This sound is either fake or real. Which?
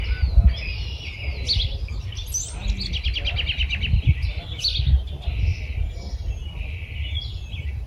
real